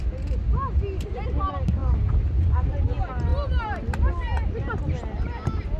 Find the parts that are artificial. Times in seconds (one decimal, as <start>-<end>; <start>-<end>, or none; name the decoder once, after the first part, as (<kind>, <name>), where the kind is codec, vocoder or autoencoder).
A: none